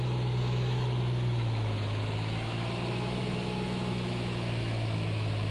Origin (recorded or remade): remade